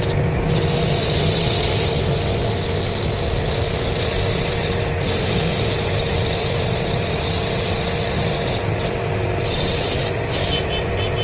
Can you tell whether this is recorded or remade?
recorded